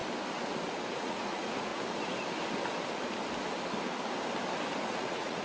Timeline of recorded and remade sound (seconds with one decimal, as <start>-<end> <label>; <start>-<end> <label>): 0.0-0.9 recorded; 0.9-1.7 remade; 1.7-4.9 recorded; 4.9-5.4 remade